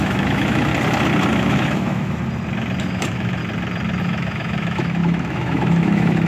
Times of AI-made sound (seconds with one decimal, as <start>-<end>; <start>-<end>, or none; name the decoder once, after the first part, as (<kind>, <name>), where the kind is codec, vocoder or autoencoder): 0.0-0.7 (autoencoder, DAC-VAE); 1.3-2.2; 2.8-3.4; 4.0-6.3